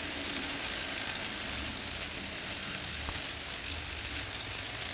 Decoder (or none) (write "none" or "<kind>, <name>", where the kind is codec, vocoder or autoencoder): none